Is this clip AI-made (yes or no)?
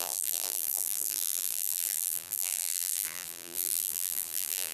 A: yes